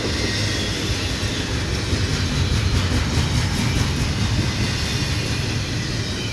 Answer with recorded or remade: recorded